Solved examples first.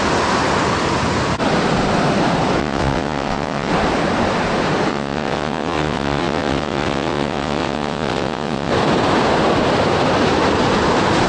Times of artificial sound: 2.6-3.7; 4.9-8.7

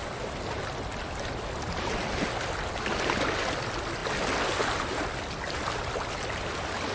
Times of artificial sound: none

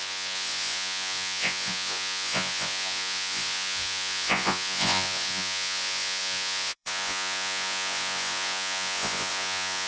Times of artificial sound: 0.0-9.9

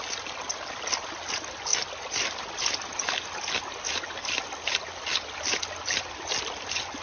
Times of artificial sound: none

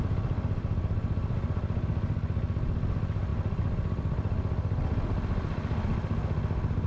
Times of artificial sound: none

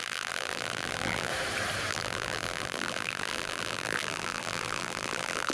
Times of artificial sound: 0.0-1.3; 1.9-5.5

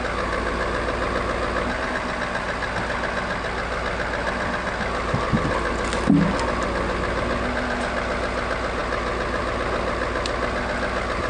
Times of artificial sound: none

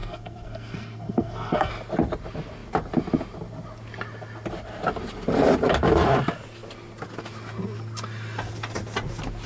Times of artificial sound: 0.0-1.7